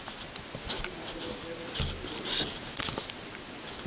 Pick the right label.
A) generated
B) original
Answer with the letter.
B